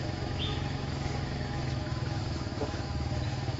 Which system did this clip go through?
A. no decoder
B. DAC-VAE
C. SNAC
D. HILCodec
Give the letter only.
B